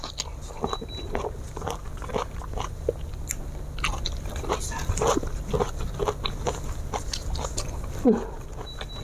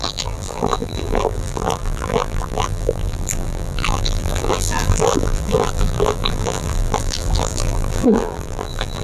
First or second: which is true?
first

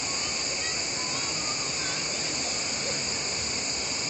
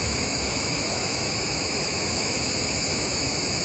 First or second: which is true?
first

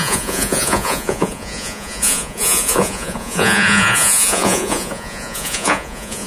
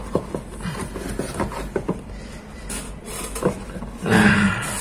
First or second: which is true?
second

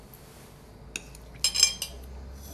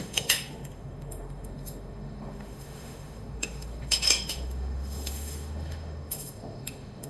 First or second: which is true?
first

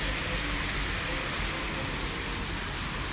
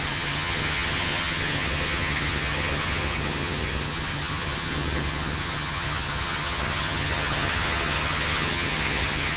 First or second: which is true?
first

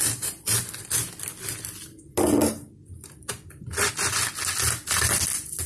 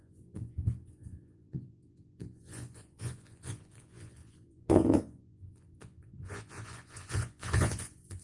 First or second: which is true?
first